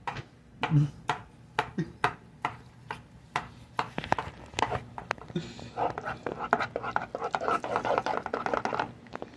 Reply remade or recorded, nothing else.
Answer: recorded